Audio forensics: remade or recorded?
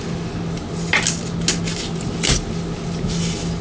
recorded